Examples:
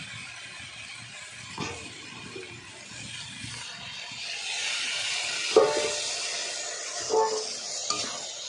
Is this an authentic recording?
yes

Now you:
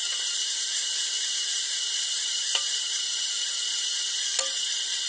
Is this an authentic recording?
yes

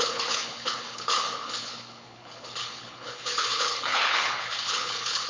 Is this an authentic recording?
no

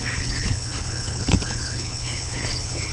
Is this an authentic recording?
no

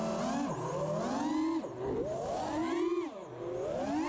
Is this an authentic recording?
yes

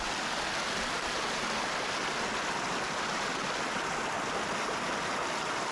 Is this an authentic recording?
yes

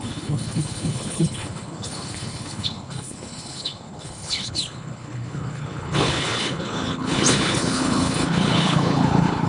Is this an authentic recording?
no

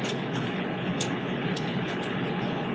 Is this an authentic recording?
no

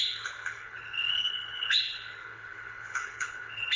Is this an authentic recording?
no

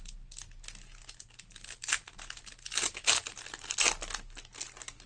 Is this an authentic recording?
yes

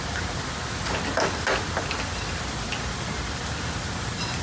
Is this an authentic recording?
yes